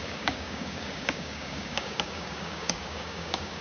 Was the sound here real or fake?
fake